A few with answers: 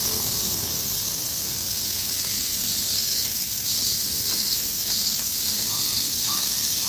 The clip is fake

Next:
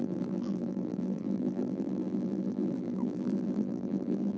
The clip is fake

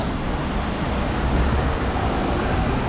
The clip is real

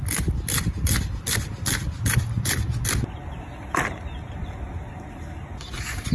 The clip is real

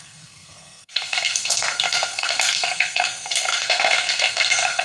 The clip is fake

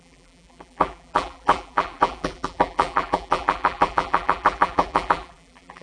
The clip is fake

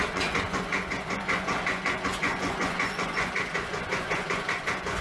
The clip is fake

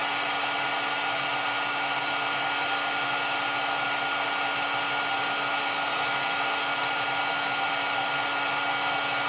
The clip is real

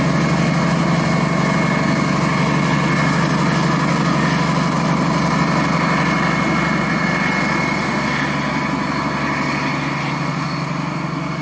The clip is real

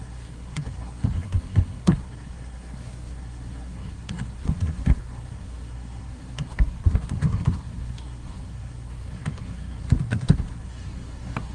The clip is fake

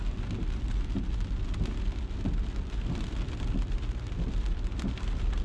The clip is fake